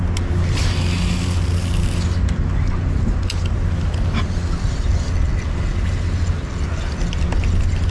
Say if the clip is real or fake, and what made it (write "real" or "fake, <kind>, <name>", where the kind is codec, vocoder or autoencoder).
real